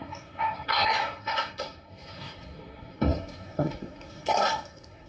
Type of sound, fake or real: fake